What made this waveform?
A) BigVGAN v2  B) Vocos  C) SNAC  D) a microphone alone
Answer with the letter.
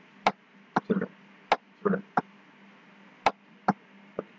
D